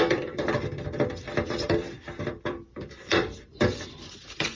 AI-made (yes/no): yes